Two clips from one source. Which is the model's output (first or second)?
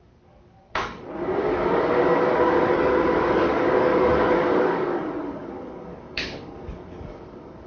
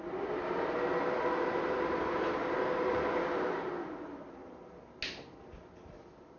first